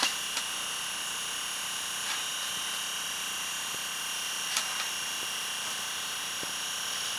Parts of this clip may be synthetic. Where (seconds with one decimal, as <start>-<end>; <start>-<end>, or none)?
none